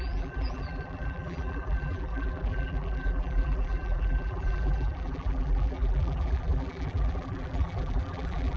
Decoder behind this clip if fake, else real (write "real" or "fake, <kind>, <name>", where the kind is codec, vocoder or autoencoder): fake, vocoder, BigVGAN v2